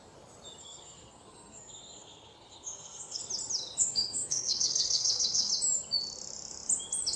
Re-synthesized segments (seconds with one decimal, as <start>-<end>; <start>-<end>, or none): 0.6-3.2; 3.8-5.5